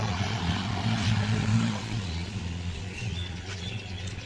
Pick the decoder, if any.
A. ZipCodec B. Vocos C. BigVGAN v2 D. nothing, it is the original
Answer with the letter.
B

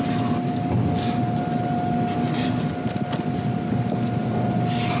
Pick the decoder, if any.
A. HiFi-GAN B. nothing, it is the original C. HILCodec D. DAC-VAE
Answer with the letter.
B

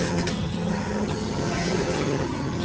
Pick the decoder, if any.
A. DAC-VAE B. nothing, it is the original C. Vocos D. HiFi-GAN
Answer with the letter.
D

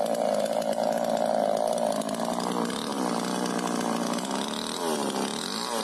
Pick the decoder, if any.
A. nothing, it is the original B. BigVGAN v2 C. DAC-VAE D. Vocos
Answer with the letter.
A